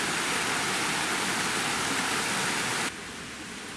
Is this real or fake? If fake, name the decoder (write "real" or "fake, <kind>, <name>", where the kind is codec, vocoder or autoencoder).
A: real